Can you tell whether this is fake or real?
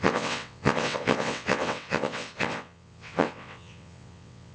fake